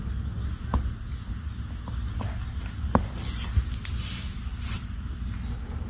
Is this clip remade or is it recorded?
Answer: recorded